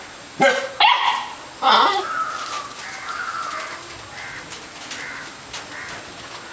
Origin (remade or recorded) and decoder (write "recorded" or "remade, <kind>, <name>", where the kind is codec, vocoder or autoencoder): recorded